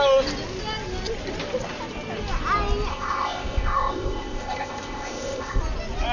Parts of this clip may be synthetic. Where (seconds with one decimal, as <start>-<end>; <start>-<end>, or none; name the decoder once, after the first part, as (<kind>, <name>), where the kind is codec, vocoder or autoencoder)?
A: 2.9-5.6 (codec, ZipCodec)